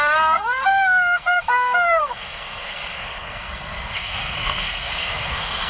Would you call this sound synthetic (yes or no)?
yes